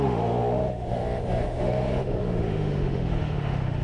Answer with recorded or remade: remade